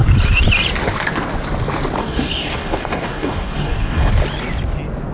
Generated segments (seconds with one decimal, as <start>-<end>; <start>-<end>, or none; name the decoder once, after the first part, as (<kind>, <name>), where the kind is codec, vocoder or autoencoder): 2.0-4.1 (codec, DAC)